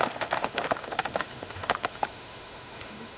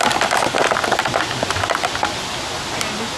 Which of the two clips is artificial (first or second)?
first